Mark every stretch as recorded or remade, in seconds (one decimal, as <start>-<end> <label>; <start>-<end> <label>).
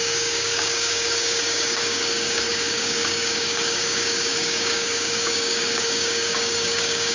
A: 0.0-7.1 remade